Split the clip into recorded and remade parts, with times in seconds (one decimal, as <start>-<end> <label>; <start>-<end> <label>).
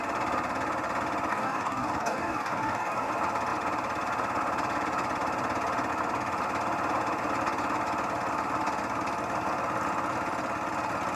0.0-1.3 recorded; 1.3-3.1 remade; 3.1-11.2 recorded